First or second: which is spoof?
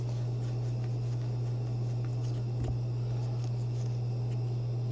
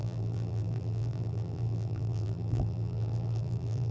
second